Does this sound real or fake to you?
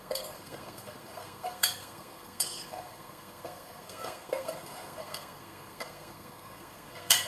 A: fake